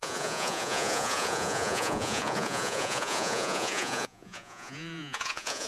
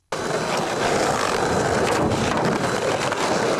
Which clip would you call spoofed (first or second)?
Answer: first